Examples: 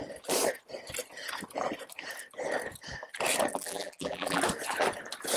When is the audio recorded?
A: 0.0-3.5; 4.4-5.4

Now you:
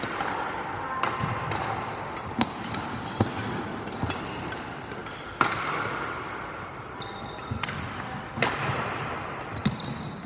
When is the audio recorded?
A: 0.0-10.3